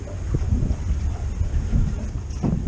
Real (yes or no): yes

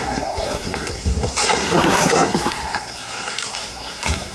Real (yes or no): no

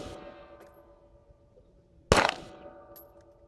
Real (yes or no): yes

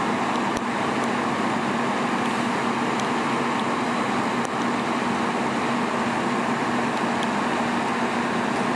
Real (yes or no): yes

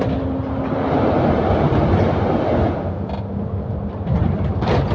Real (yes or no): yes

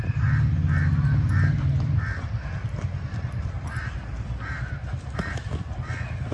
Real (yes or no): yes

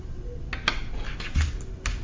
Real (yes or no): yes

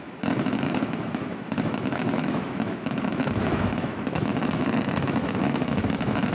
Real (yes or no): no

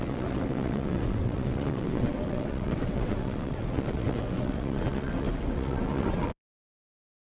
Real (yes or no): no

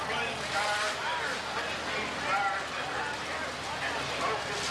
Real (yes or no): yes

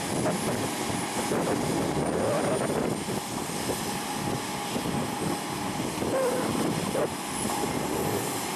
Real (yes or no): yes